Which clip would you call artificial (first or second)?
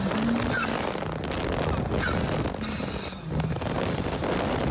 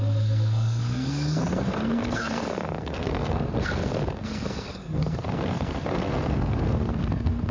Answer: second